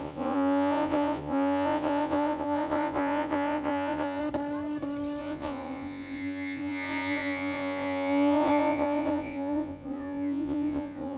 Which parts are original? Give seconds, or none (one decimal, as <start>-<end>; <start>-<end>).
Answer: 4.2-5.2